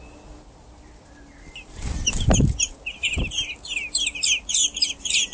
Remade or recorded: recorded